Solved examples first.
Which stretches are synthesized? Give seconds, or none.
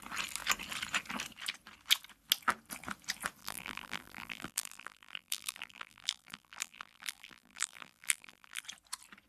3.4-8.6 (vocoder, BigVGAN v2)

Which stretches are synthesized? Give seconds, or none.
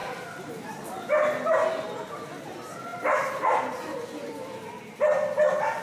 0.0-0.5 (vocoder, BigVGAN v2); 2.9-4.7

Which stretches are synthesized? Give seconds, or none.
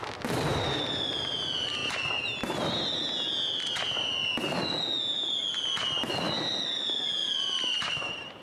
none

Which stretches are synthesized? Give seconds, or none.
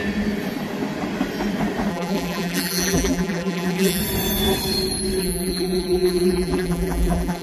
1.9-4.0 (vocoder, BigVGAN v2); 5.2-7.4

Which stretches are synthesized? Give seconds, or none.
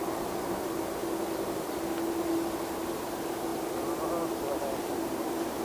1.0-1.8 (vocoder, BigVGAN v2); 3.5-4.9